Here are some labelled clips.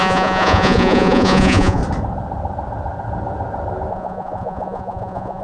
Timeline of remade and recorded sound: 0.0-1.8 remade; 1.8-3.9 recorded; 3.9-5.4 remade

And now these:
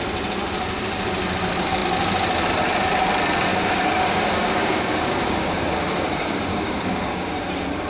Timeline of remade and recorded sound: 0.0-3.5 recorded; 3.5-7.4 remade; 7.4-7.9 recorded

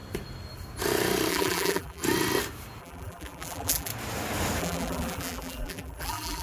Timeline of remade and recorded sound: 0.0-1.3 recorded; 1.3-2.0 remade; 2.0-2.8 recorded; 2.8-3.9 remade; 3.9-4.6 recorded; 4.6-6.4 remade

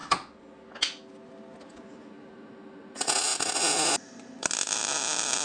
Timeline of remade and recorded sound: 0.0-5.4 recorded